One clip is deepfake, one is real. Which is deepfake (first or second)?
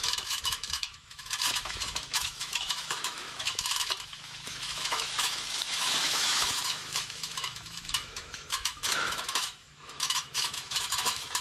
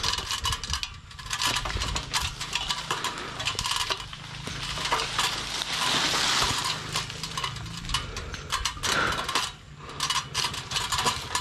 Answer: first